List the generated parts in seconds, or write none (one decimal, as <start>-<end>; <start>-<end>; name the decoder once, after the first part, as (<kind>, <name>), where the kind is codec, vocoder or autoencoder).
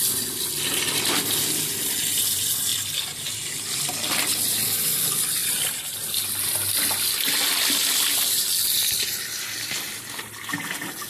none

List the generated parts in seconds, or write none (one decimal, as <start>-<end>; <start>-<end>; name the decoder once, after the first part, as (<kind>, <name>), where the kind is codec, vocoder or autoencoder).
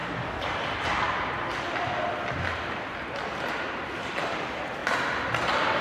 4.8-5.8 (vocoder, BigVGAN v2)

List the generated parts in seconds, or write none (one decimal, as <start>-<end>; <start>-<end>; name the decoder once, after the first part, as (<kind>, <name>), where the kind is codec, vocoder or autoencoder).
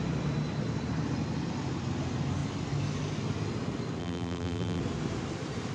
4.0-4.8 (vocoder, BigVGAN v2)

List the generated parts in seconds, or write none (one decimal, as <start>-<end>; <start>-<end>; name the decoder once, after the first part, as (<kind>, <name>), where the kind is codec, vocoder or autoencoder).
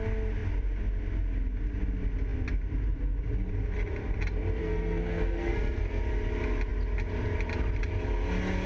4.6-6.0 (codec, SNAC)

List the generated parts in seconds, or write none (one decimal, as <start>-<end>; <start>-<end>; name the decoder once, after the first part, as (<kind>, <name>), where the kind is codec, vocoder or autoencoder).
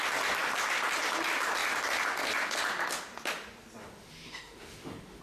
3.8-5.2 (autoencoder, DAC-VAE)